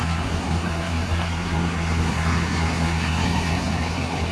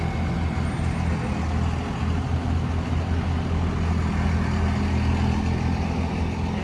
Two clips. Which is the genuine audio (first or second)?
second